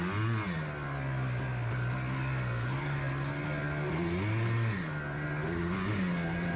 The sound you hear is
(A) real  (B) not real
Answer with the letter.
A